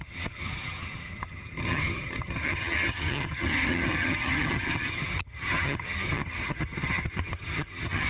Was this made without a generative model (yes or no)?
no